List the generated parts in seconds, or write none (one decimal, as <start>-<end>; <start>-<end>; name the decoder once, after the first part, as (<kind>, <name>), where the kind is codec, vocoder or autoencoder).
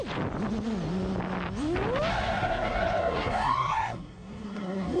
2.1-5.0 (codec, SNAC)